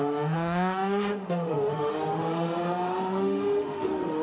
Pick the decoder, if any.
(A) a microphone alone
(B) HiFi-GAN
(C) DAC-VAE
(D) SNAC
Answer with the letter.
C